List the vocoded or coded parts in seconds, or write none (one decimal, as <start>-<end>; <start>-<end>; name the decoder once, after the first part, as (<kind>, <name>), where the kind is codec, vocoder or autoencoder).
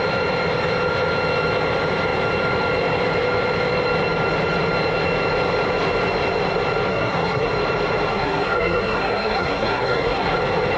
6.9-7.5 (codec, SNAC); 8.1-10.4